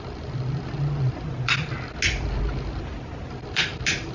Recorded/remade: recorded